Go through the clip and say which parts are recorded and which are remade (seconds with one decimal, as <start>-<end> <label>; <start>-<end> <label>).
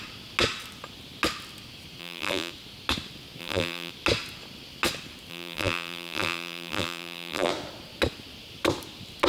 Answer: 0.0-2.0 recorded; 2.0-2.5 remade; 2.5-3.4 recorded; 3.4-3.9 remade; 3.9-5.3 recorded; 5.3-7.5 remade; 7.5-9.3 recorded